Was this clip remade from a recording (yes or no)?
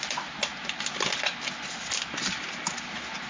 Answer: no